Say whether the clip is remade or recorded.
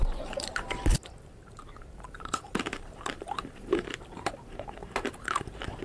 remade